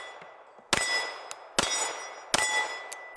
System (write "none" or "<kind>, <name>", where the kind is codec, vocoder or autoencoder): none